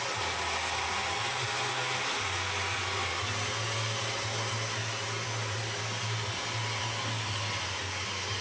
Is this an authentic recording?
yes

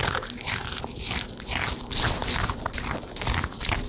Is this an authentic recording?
yes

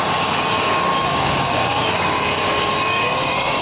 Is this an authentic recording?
no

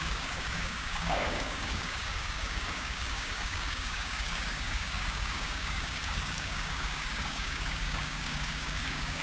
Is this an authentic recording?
no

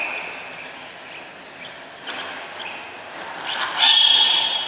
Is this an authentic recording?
yes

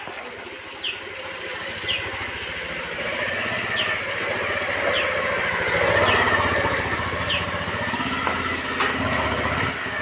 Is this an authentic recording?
yes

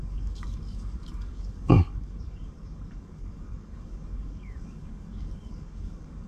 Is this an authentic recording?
no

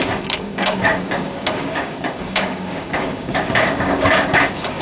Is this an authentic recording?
no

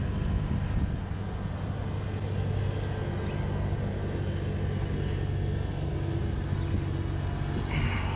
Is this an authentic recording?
yes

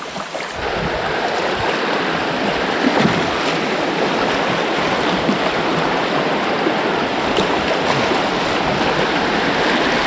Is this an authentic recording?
yes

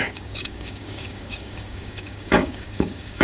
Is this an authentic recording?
no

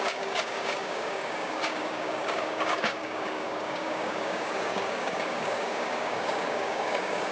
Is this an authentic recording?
no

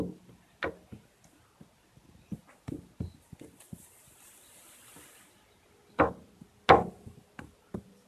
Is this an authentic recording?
yes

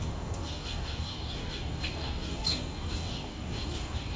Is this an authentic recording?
no